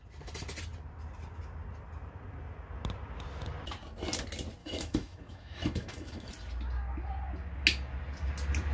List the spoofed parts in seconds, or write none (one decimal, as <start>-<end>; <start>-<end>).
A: 4.6-6.3